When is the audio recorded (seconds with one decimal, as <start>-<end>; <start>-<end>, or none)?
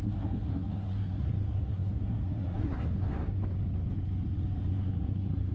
3.4-4.7